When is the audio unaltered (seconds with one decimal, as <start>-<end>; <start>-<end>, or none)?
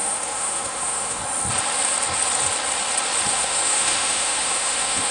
1.2-3.3